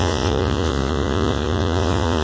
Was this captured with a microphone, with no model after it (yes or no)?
no